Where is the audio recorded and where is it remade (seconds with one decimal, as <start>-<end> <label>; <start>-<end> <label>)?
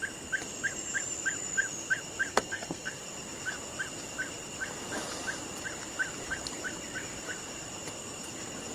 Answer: 0.0-2.3 recorded; 2.3-3.0 remade; 3.0-8.7 recorded